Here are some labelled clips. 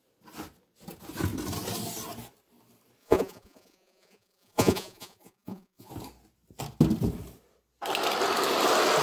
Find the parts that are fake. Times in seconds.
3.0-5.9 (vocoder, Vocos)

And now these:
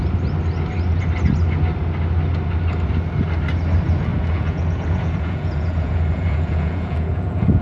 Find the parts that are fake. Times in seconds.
4.1-7.6 (vocoder, Vocos)

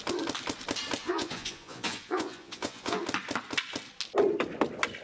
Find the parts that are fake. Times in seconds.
1.0-3.0 (vocoder, Vocos)

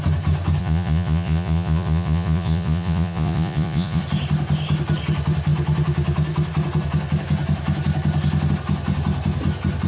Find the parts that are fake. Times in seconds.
0.6-4.0 (vocoder, Vocos)

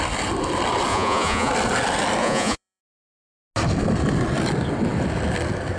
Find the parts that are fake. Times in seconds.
0.9-1.5 (vocoder, Vocos); 2.2-2.8

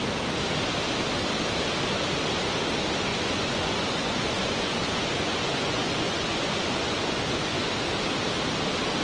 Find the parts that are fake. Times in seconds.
3.1-7.7 (vocoder, Vocos)

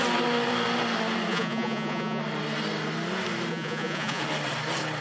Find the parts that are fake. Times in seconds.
1.3-2.2 (vocoder, Vocos); 3.5-4.2

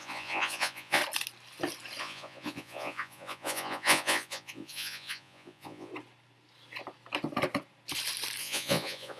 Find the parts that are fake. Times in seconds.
0.0-1.0 (vocoder, Vocos); 2.0-5.9; 8.4-9.2